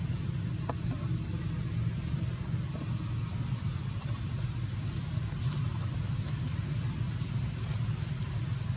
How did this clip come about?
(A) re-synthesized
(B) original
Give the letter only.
B